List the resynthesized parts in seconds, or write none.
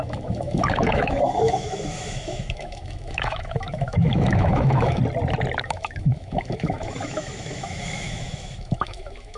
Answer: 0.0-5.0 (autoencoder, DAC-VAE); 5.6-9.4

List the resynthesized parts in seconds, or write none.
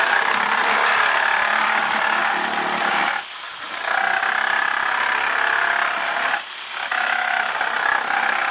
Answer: 0.6-1.8 (vocoder, BigVGAN v2); 2.2-3.0